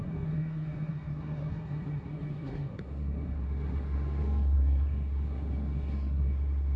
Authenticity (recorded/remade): remade